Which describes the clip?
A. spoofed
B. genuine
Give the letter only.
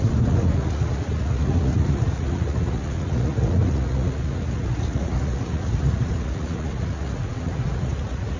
A